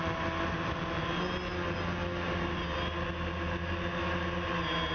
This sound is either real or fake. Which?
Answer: real